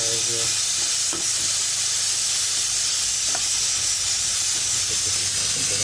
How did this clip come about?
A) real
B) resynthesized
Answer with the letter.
A